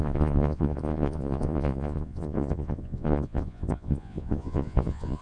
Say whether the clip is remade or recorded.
remade